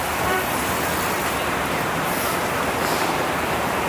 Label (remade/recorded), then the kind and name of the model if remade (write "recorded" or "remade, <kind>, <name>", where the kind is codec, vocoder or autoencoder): remade, vocoder, BigVGAN v2